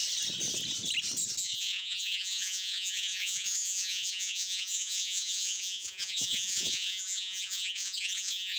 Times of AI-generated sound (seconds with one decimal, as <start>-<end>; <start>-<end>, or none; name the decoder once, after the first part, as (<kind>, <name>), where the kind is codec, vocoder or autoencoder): 1.4-8.6 (vocoder, Vocos)